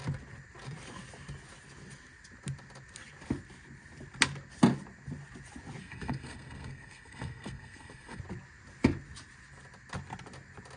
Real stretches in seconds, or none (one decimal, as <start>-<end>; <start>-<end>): 0.0-5.8; 8.2-10.8